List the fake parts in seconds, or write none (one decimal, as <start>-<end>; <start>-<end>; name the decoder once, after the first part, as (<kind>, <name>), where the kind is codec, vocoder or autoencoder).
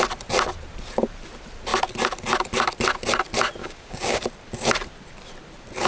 3.6-4.2 (codec, DAC)